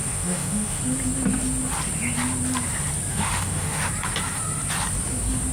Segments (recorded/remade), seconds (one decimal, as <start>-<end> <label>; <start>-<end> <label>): 0.0-0.8 remade; 0.8-3.1 recorded; 3.1-3.9 remade; 3.9-5.5 recorded